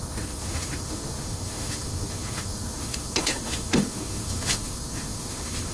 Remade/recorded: remade